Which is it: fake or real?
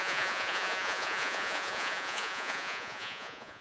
fake